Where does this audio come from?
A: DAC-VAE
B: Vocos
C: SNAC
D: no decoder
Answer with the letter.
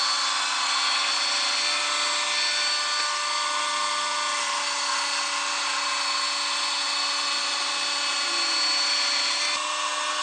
D